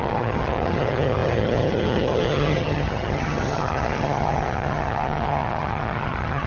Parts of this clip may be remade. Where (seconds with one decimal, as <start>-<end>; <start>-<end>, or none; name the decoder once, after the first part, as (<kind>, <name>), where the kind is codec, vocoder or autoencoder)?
0.0-6.5 (vocoder, HiFi-GAN)